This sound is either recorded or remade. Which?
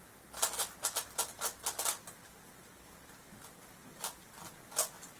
recorded